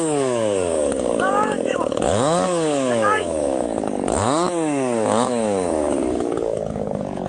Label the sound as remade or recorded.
remade